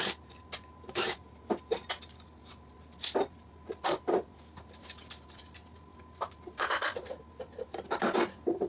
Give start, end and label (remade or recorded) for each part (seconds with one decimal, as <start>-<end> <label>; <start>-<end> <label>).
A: 0.0-8.7 recorded